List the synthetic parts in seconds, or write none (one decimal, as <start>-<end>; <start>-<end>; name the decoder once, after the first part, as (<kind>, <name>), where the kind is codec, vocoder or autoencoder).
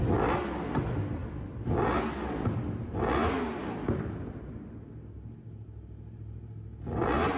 none